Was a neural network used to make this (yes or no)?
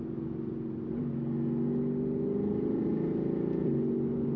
no